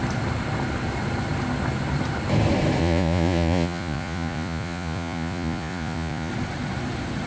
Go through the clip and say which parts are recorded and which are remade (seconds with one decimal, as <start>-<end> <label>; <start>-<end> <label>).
0.0-2.8 recorded; 2.8-6.3 remade; 6.3-7.3 recorded